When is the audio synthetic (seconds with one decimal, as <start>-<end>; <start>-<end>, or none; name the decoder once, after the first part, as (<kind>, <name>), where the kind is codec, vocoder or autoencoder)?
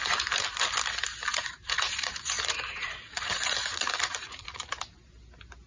1.3-4.7 (vocoder, Vocos)